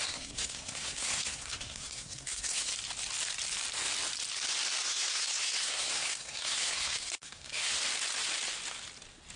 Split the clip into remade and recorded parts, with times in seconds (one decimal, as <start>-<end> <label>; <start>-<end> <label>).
0.0-2.7 remade; 2.7-4.8 recorded; 4.8-7.8 remade; 7.8-9.4 recorded